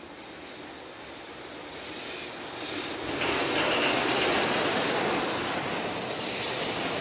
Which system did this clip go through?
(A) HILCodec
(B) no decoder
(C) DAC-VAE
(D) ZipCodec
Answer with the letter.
B